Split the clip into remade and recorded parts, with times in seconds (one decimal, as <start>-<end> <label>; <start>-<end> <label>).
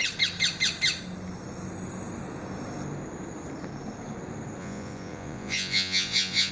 0.0-4.6 recorded; 4.6-6.5 remade